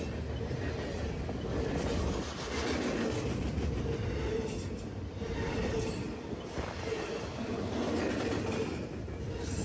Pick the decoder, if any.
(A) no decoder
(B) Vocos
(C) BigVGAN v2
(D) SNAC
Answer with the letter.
A